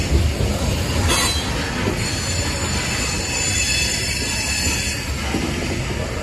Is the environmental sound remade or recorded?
recorded